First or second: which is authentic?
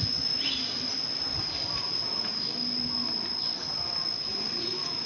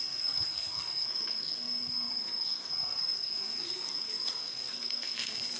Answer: first